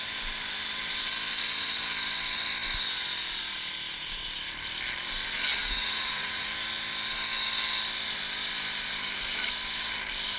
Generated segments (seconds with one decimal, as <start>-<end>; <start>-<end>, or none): 5.6-6.5